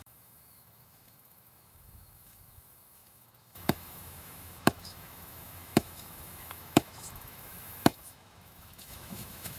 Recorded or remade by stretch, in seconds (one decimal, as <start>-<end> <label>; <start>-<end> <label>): 0.0-9.6 remade